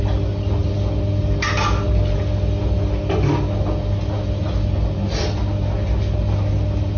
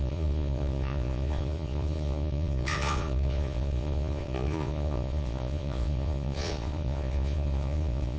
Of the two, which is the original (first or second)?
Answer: first